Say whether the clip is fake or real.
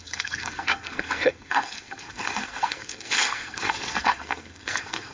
fake